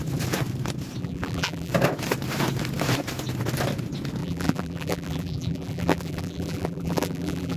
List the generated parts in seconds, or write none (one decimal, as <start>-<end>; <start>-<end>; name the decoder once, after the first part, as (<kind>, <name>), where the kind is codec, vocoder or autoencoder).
1.0-1.7 (vocoder, BigVGAN v2); 4.2-7.6